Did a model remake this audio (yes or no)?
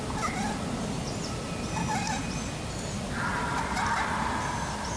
no